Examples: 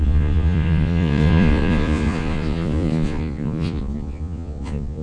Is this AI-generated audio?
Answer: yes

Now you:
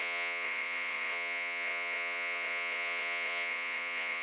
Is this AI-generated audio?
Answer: yes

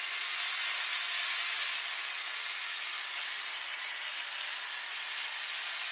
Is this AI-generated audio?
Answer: no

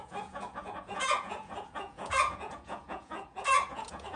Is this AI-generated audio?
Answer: yes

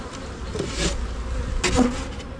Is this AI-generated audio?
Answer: no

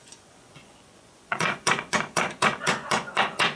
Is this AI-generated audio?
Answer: yes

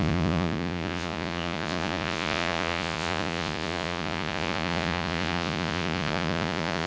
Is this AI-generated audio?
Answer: yes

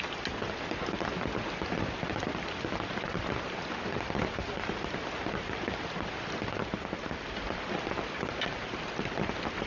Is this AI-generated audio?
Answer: no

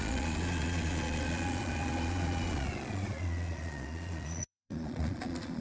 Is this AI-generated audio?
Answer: yes